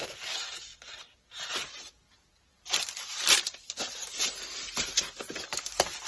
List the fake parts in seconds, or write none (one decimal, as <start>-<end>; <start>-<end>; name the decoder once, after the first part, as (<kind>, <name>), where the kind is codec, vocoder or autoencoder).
0.7-3.4 (vocoder, BigVGAN v2)